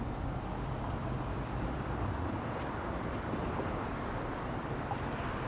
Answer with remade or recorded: remade